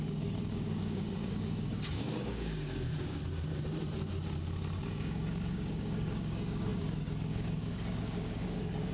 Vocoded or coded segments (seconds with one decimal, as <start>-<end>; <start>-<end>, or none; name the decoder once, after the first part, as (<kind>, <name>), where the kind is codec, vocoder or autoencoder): 0.0-3.2 (codec, DAC); 4.8-8.9